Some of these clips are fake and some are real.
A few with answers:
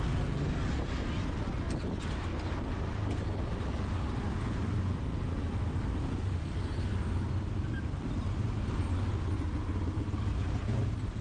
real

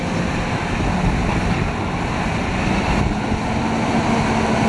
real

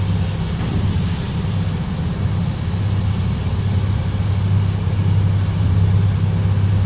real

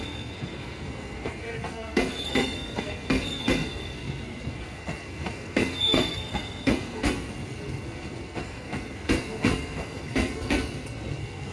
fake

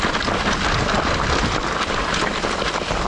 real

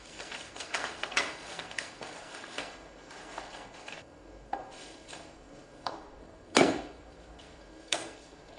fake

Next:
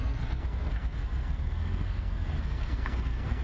fake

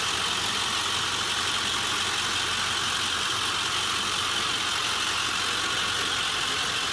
real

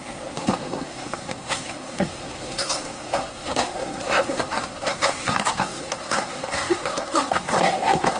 fake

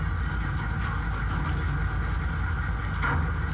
real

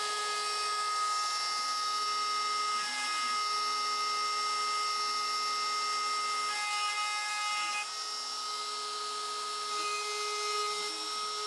real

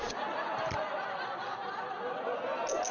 real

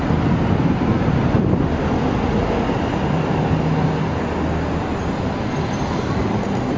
real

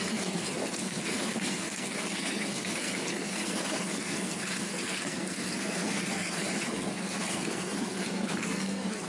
fake